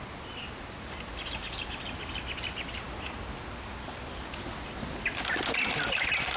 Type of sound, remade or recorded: recorded